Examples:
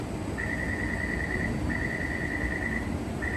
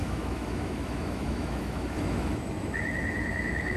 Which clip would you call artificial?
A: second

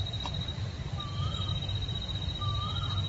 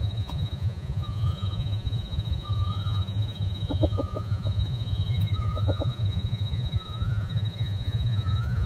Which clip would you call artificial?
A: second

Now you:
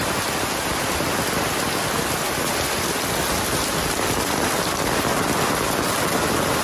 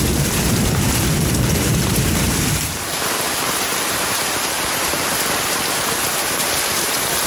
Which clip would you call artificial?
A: second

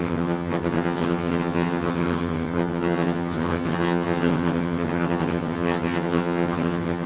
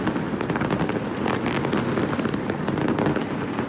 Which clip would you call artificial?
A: first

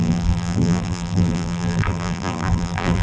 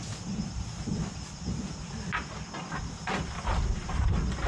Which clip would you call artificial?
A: first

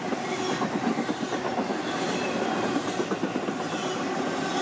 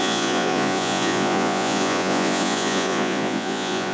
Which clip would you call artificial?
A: second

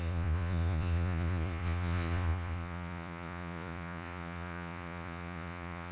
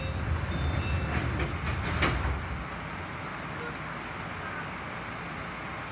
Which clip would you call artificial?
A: first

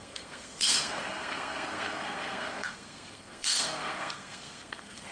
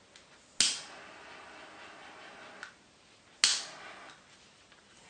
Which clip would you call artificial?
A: first